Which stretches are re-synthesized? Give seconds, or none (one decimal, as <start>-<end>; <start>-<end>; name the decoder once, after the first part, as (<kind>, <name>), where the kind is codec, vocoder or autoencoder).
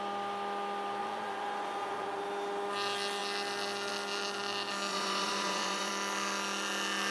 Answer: 1.0-2.2 (vocoder, Vocos); 4.9-5.9